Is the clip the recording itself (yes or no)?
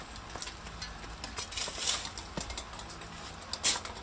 yes